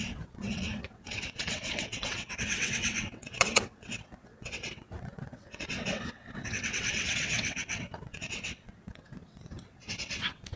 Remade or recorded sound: remade